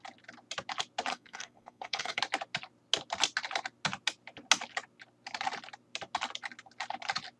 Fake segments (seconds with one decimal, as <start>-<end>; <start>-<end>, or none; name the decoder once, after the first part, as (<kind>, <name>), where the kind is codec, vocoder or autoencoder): 1.1-2.2 (codec, SNAC)